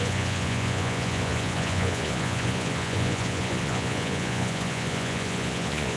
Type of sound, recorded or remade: remade